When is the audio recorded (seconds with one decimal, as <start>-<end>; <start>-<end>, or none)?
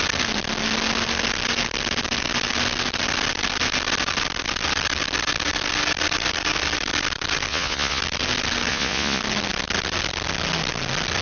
0.0-7.5; 8.0-8.7; 9.2-11.2